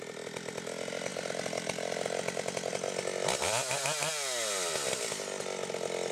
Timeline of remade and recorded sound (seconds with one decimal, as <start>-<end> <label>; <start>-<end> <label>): 0.0-1.1 recorded; 1.1-2.7 remade; 2.7-6.1 recorded